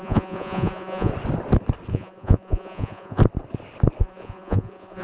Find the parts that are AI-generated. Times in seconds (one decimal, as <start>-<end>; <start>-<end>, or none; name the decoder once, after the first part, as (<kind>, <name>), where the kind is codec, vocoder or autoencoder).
0.0-1.1 (vocoder, Vocos); 1.9-3.2; 4.0-5.0